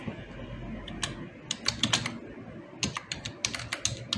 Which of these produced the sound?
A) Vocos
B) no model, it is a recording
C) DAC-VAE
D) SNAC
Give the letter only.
B